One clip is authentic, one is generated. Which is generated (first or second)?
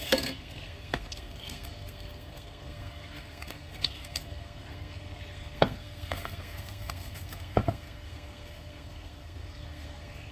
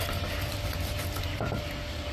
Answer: first